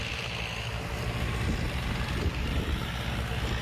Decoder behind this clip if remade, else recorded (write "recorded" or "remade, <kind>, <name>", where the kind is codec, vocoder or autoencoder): recorded